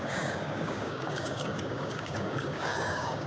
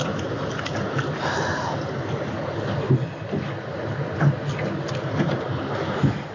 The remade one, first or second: first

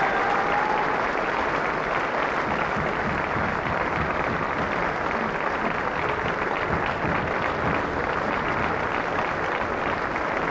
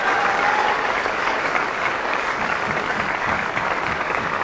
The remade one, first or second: second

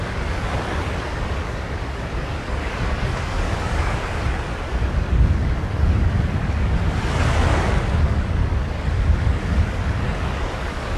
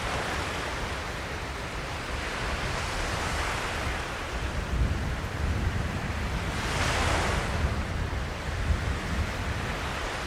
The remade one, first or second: first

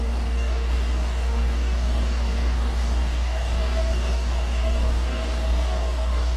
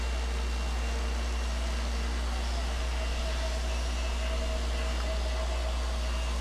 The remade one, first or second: first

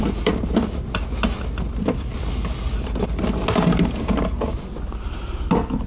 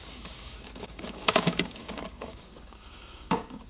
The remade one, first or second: second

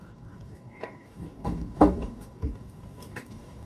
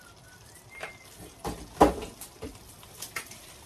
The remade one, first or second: first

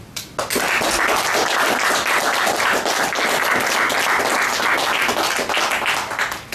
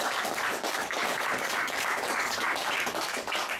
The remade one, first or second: second